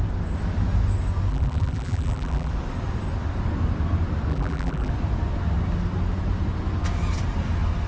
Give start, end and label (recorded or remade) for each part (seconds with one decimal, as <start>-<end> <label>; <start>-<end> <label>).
0.0-1.3 recorded; 1.3-2.5 remade; 2.5-4.3 recorded; 4.3-4.9 remade; 4.9-7.9 recorded